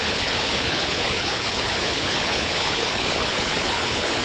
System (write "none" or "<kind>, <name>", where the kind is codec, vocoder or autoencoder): codec, HILCodec